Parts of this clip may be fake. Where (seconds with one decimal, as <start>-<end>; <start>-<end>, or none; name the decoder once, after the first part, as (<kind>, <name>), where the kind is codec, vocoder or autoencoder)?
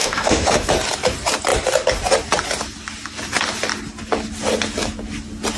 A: 0.0-0.7 (autoencoder, DAC-VAE)